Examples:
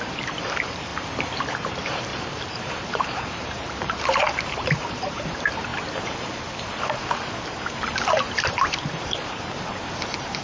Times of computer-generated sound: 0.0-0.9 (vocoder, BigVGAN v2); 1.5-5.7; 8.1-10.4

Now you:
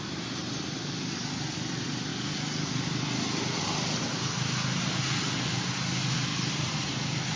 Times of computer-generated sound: 6.3-6.9 (vocoder, BigVGAN v2)

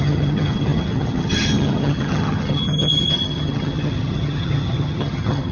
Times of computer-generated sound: 0.0-5.5 (vocoder, HiFi-GAN)

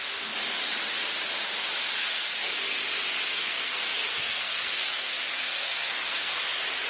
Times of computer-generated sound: 2.0-2.6 (codec, SNAC); 3.3-6.4